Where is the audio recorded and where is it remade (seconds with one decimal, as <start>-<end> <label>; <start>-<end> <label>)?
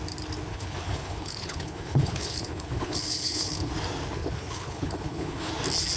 0.0-0.5 recorded; 0.5-3.7 remade; 3.7-4.2 recorded; 4.2-5.5 remade; 5.5-6.0 recorded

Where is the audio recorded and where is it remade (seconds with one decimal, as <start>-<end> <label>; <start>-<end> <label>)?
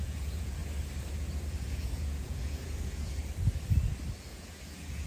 0.0-0.6 remade; 0.6-1.1 recorded; 1.1-3.2 remade; 3.2-4.2 recorded; 4.2-5.1 remade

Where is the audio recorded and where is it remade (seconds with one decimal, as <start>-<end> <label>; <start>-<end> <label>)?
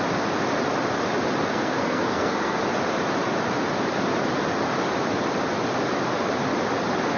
0.0-1.5 recorded; 1.5-2.6 remade; 2.6-7.2 recorded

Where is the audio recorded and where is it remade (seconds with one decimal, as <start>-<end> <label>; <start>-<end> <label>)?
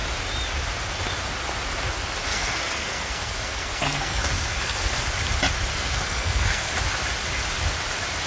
0.0-2.3 recorded; 2.3-5.0 remade; 5.0-5.7 recorded; 5.7-6.7 remade; 6.7-8.3 recorded